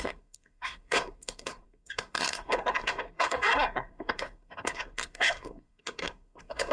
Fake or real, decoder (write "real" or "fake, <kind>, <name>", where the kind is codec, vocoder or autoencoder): fake, codec, SNAC